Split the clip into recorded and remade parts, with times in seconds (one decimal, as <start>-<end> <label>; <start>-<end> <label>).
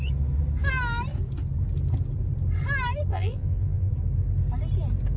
0.0-3.1 recorded; 3.1-3.9 remade; 3.9-5.2 recorded